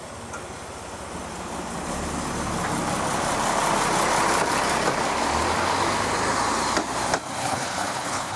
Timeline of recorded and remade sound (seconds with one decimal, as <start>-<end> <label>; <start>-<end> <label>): 0.0-7.4 recorded; 7.4-8.4 remade